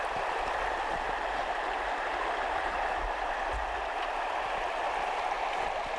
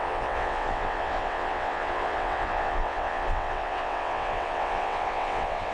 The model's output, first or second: second